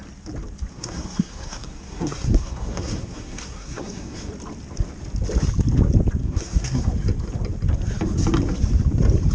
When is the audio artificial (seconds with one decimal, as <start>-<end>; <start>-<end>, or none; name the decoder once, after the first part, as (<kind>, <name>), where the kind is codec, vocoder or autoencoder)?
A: 0.7-4.3 (codec, SNAC); 6.2-6.9